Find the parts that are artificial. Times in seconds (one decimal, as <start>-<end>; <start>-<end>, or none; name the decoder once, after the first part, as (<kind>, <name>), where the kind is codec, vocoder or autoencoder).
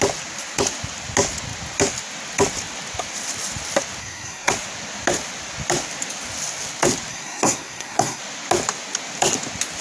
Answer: 4.0-4.5 (codec, SNAC); 7.1-8.2